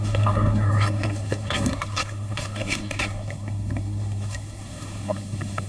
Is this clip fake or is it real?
fake